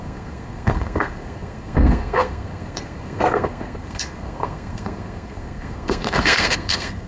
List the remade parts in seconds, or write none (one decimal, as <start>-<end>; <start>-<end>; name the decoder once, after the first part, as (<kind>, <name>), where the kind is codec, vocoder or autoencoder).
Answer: 0.0-7.1 (codec, SNAC)

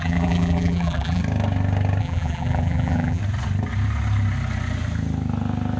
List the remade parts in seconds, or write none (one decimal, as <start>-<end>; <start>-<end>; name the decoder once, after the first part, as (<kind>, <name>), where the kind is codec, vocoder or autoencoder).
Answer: 0.0-1.2 (vocoder, BigVGAN v2); 2.0-3.2

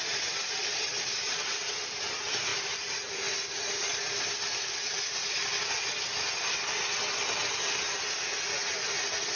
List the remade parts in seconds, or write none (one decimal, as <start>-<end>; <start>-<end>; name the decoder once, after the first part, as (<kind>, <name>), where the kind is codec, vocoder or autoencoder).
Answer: 2.5-3.2 (vocoder, BigVGAN v2)